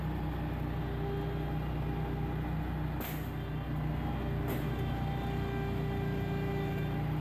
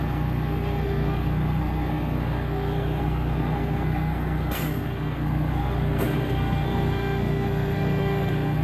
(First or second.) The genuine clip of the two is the first